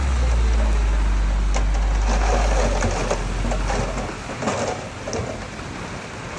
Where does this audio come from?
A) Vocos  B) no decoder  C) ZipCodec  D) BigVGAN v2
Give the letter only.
B